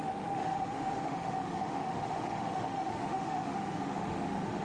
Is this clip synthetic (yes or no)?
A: yes